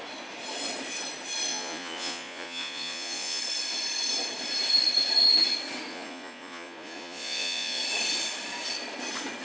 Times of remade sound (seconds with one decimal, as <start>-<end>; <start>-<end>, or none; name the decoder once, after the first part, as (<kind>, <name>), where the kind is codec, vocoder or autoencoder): 1.5-3.4 (vocoder, Vocos); 5.9-7.8